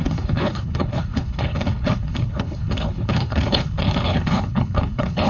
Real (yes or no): no